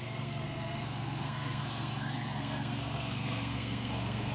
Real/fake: fake